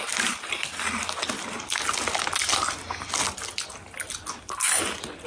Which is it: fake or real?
real